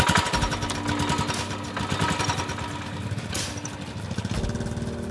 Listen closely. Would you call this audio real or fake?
real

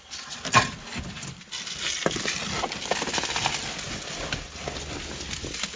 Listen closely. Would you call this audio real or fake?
real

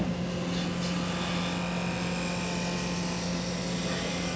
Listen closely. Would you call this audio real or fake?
real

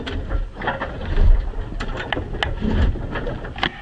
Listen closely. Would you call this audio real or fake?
real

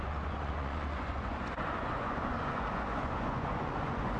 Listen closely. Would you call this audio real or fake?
fake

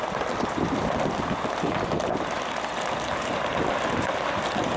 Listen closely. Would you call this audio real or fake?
fake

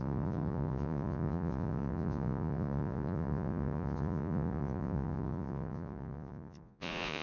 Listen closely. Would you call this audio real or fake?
fake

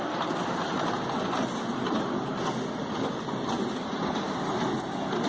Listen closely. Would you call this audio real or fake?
real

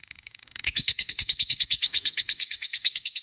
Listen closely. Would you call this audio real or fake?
fake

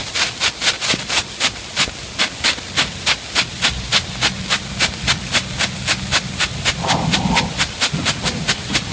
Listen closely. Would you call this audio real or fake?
real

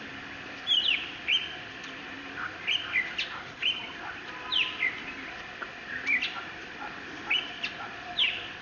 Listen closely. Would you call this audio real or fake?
fake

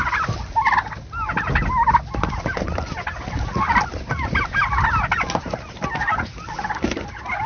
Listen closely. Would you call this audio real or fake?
real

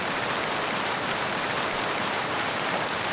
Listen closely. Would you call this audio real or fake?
fake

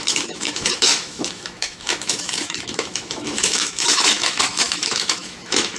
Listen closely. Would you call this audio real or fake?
fake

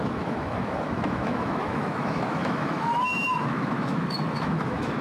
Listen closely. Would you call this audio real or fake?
fake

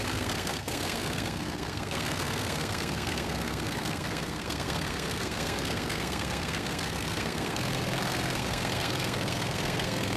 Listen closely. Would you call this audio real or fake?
fake